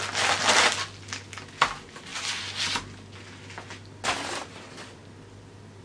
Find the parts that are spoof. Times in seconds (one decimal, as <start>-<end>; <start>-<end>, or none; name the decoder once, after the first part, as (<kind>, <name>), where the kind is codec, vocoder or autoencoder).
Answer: none